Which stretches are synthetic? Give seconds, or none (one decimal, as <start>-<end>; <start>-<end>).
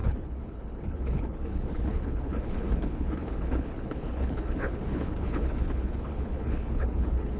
0.0-7.4